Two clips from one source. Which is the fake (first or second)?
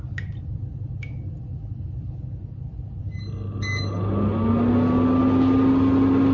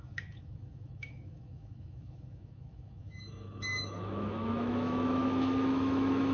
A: second